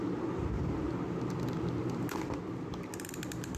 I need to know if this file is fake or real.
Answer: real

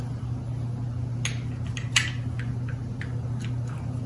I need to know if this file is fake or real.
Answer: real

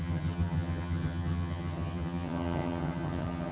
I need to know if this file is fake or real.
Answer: fake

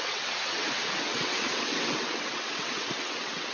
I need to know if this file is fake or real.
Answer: fake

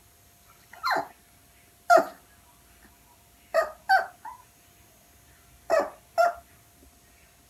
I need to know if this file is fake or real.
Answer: real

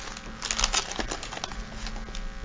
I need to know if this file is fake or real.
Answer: real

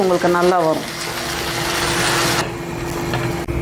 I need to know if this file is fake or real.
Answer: real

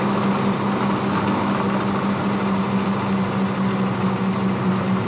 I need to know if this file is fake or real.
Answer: real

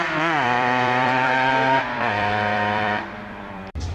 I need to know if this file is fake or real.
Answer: fake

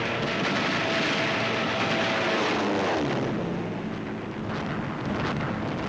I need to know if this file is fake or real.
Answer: real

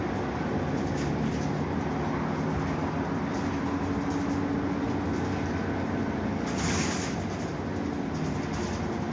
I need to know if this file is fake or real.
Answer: real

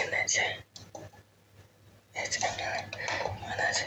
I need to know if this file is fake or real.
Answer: real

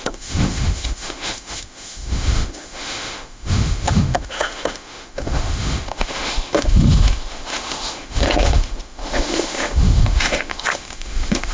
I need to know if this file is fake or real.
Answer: fake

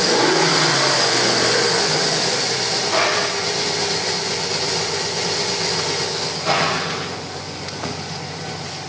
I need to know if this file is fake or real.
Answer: fake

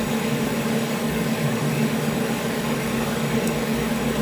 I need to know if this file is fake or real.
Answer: fake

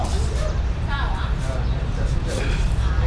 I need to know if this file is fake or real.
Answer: real